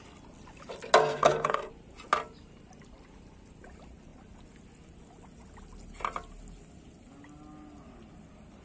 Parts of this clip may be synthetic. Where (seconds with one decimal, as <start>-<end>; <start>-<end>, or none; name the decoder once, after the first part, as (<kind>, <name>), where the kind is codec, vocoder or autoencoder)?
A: 1.0-1.7 (codec, SNAC)